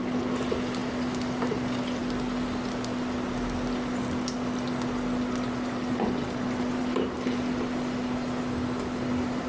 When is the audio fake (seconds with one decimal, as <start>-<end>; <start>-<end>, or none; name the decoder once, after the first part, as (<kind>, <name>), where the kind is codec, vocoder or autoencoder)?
none